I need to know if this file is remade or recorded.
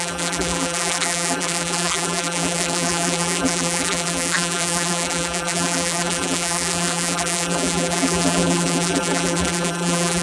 remade